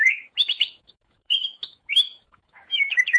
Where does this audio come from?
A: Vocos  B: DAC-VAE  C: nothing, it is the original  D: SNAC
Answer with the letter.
B